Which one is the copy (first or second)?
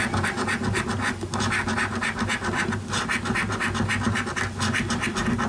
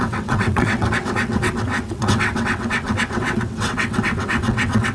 second